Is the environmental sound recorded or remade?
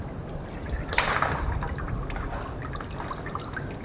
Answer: recorded